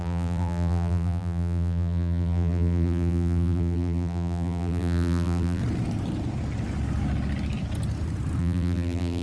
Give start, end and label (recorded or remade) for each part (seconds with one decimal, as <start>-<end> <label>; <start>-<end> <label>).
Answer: 0.0-5.6 remade; 5.6-8.4 recorded; 8.4-9.2 remade